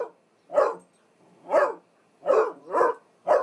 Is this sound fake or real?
real